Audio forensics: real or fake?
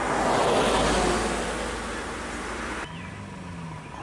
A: real